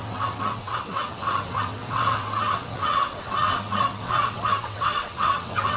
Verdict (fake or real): fake